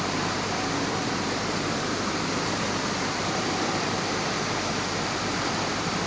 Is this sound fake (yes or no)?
yes